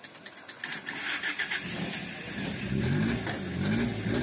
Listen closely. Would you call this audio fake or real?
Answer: real